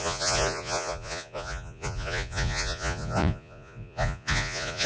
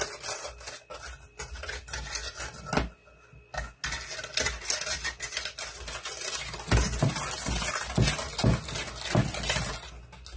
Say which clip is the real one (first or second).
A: second